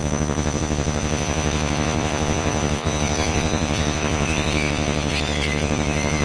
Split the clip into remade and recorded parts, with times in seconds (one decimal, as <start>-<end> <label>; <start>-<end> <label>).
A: 0.0-6.2 remade